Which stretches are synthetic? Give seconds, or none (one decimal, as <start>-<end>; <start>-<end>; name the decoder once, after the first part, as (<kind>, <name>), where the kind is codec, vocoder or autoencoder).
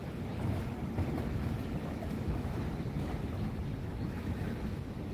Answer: 1.8-2.6 (autoencoder, DAC-VAE); 3.8-5.1